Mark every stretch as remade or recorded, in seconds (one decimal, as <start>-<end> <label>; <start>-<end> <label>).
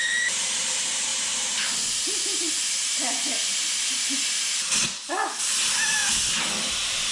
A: 0.0-1.1 recorded; 1.1-2.0 remade; 2.0-7.1 recorded